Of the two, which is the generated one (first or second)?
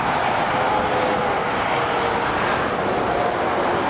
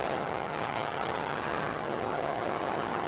second